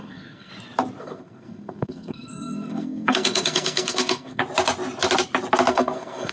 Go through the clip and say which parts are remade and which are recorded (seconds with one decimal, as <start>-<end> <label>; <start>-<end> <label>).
0.0-0.5 remade; 0.5-1.0 recorded; 1.0-4.4 remade; 4.4-5.7 recorded; 5.7-6.3 remade